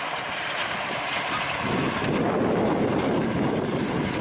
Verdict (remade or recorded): recorded